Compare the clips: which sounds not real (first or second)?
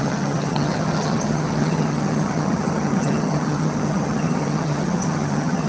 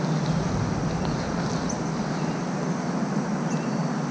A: first